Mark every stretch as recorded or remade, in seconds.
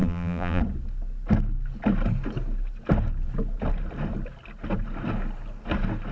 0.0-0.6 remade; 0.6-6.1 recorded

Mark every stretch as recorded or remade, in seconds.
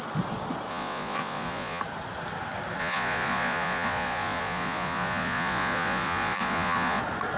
0.0-0.7 recorded; 0.7-1.8 remade; 1.8-2.8 recorded; 2.8-7.0 remade; 7.0-7.4 recorded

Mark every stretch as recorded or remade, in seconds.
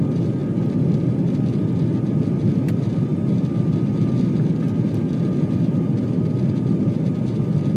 0.0-7.8 recorded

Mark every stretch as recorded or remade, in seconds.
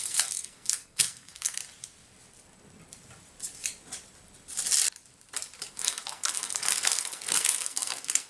0.0-1.6 remade; 1.6-5.7 recorded; 5.7-8.3 remade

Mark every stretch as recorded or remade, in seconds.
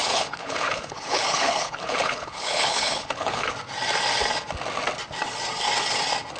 0.0-3.5 remade; 3.5-6.4 recorded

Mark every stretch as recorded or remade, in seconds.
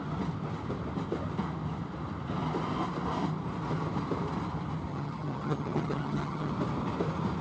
0.0-4.9 recorded; 4.9-6.5 remade; 6.5-7.4 recorded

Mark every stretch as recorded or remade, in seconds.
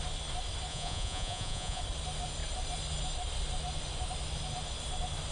0.0-0.7 recorded; 0.7-1.8 remade; 1.8-5.3 recorded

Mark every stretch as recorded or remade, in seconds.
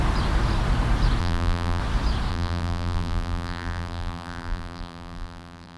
0.0-1.2 recorded; 1.2-1.8 remade; 1.8-2.3 recorded; 2.3-5.8 remade